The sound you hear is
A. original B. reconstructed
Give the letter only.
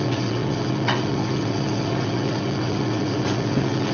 B